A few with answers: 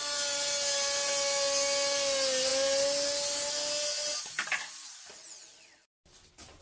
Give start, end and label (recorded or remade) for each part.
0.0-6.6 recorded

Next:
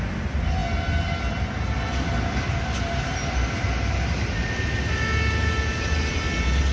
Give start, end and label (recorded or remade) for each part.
0.0-6.7 recorded